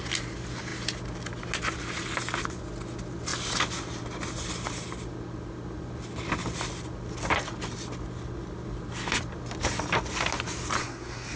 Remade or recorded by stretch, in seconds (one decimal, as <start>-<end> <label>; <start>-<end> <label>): 0.0-10.8 recorded; 10.8-11.4 remade